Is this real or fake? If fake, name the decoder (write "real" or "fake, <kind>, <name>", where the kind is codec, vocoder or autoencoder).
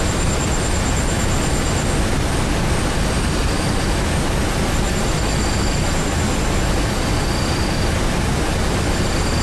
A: real